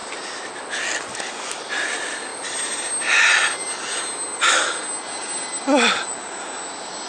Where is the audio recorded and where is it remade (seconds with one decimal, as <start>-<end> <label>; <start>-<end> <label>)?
0.0-1.1 recorded; 1.1-1.7 remade; 1.7-7.1 recorded